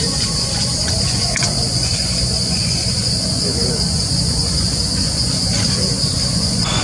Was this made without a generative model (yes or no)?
no